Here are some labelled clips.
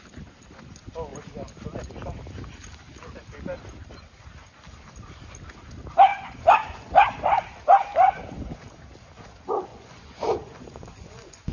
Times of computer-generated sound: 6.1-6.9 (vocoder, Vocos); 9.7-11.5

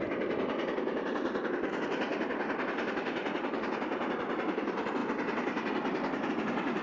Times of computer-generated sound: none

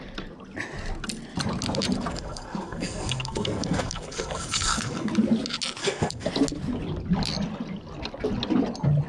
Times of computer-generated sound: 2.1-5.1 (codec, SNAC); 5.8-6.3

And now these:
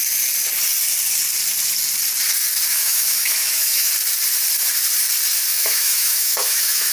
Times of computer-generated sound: 2.7-3.9 (autoencoder, DAC-VAE); 5.5-6.9